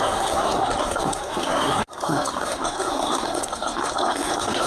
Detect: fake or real fake